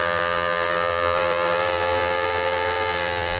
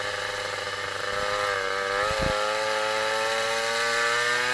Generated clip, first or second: first